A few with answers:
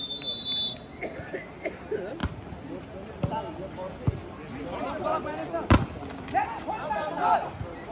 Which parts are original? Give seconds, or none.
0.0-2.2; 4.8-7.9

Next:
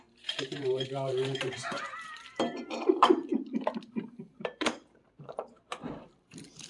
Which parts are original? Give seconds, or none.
3.3-4.1

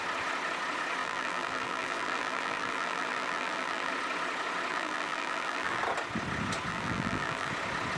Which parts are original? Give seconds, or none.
0.0-1.0; 3.9-4.7; 5.8-6.7; 7.5-8.0

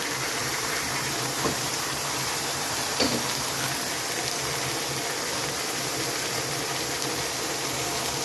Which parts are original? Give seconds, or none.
0.0-0.4; 3.0-8.2

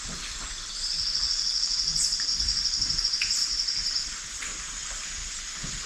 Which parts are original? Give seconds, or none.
0.0-2.3; 3.0-5.9

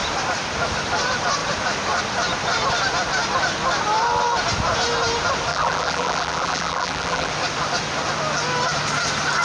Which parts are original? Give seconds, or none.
0.0-5.5; 7.3-9.4

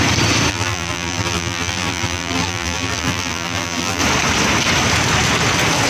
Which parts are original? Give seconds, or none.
0.0-0.5; 4.0-5.9